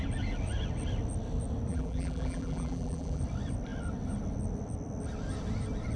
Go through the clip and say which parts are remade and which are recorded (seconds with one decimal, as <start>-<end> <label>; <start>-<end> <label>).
0.0-1.7 recorded; 1.7-3.2 remade; 3.2-6.0 recorded